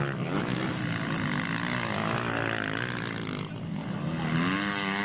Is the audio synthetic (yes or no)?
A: no